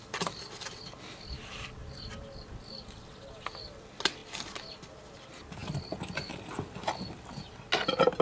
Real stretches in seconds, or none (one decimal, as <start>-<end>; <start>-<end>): 0.0-8.2